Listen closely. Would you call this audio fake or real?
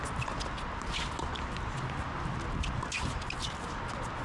real